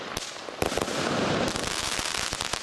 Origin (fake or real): real